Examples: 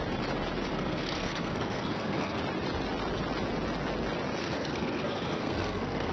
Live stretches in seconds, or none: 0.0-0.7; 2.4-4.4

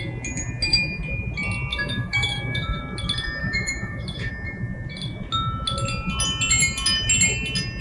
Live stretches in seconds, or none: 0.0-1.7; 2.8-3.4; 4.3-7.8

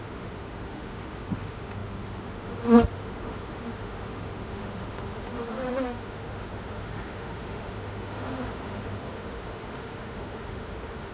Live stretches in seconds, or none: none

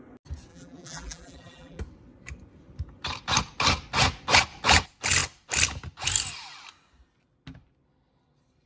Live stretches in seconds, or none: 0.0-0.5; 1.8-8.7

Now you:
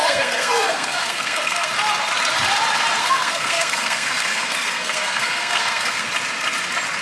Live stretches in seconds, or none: 1.7-3.0; 6.1-7.0